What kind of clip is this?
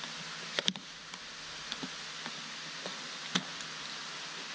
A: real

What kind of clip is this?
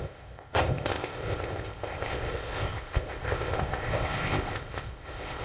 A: fake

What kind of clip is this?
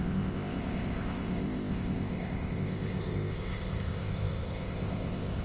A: fake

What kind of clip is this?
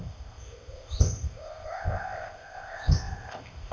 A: fake